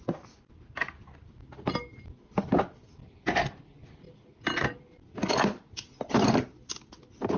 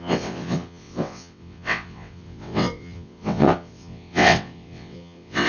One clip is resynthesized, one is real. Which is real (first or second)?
first